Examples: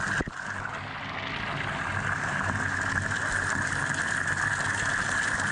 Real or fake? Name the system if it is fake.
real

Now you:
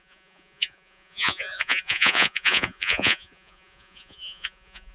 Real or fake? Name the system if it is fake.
fake, vocoder, Vocos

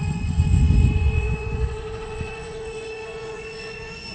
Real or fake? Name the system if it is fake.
fake, vocoder, Vocos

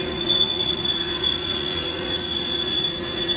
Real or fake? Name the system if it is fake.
fake, vocoder, Vocos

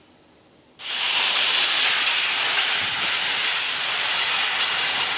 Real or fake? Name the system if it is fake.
real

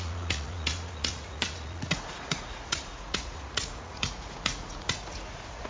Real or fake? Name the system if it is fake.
fake, vocoder, Vocos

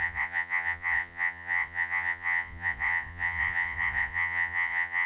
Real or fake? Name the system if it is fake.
fake, vocoder, Vocos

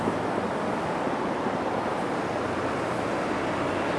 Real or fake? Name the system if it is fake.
real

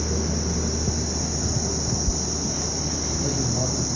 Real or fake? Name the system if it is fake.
real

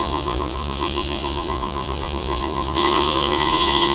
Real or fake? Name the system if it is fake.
fake, vocoder, Vocos